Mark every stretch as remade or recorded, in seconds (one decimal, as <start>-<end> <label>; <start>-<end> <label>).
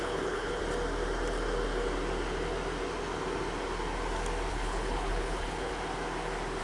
0.0-0.6 remade; 0.6-4.5 recorded; 4.5-5.7 remade; 5.7-6.6 recorded